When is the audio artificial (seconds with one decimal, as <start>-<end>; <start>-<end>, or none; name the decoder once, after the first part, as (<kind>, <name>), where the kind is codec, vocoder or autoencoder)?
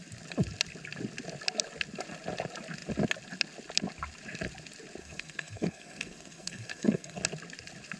5.0-7.2 (codec, SNAC)